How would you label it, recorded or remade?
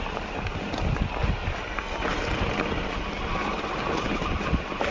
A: recorded